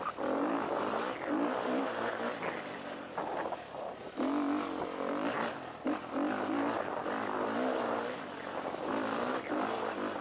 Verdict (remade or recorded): recorded